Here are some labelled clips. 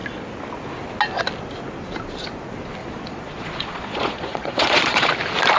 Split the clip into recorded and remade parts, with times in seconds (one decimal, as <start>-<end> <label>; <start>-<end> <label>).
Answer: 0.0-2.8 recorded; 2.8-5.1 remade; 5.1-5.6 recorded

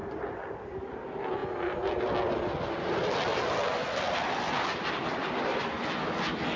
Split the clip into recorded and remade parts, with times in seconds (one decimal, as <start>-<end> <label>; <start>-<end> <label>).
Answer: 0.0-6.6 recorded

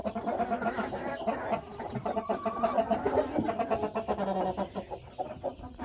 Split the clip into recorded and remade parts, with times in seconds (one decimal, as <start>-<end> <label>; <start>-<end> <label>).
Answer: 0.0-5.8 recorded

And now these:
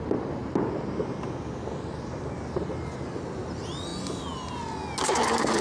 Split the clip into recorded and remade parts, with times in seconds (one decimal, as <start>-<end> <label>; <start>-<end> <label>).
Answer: 0.0-5.6 recorded

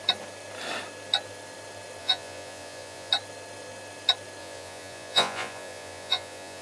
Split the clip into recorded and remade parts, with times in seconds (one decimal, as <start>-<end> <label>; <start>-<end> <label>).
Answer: 0.0-2.0 recorded; 2.0-3.1 remade; 3.1-4.4 recorded; 4.4-6.6 remade

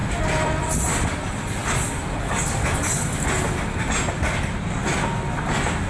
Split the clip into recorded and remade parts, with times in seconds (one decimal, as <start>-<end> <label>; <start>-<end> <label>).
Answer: 0.0-5.9 recorded